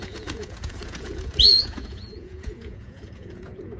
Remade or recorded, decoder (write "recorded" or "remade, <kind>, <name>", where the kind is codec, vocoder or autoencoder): remade, vocoder, Vocos